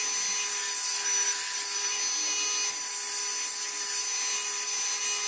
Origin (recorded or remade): recorded